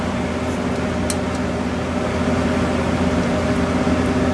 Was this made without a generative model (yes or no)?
yes